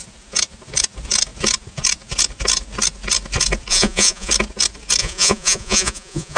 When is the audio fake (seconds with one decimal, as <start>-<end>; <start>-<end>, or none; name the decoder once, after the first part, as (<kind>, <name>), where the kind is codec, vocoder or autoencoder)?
3.7-4.3 (vocoder, Vocos); 5.0-6.4